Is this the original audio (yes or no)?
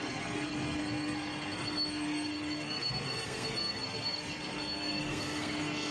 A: no